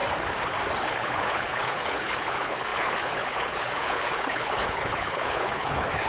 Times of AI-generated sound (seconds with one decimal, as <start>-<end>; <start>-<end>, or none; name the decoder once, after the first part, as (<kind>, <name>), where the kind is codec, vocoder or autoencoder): 0.8-6.1 (codec, HILCodec)